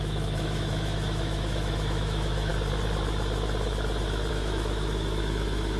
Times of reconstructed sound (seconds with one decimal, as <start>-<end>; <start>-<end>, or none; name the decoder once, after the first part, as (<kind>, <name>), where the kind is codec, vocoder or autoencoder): 0.0-2.5 (autoencoder, DAC-VAE); 4.3-5.8